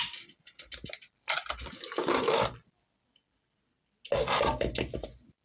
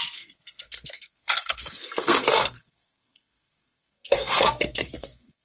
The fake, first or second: second